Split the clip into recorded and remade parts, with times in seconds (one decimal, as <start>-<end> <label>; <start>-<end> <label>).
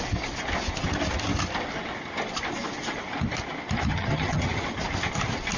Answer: 0.0-3.9 recorded; 3.9-4.6 remade; 4.6-5.6 recorded